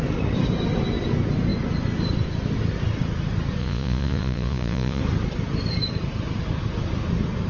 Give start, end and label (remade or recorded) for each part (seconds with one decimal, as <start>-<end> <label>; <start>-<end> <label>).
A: 0.0-3.6 recorded; 3.6-5.0 remade; 5.0-7.5 recorded

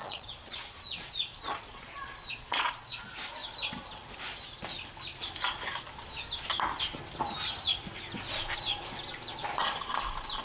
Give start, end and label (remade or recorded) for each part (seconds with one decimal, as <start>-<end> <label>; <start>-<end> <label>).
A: 0.0-3.0 remade; 3.0-10.4 recorded

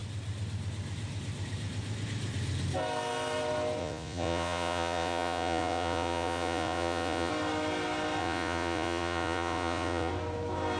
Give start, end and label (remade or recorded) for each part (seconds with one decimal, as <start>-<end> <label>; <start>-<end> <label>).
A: 0.0-3.8 recorded; 3.8-7.3 remade; 7.3-8.2 recorded; 8.2-10.1 remade; 10.1-10.8 recorded

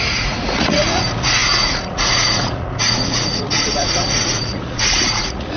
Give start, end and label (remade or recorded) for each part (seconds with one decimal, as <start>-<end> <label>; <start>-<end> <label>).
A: 0.0-5.6 remade

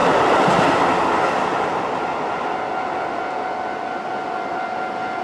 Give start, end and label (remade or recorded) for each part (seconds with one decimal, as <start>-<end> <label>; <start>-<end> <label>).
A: 0.0-5.2 recorded